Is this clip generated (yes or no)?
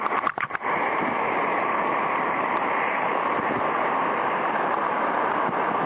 no